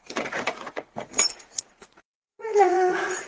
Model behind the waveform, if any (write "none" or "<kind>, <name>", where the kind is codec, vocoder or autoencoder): vocoder, Vocos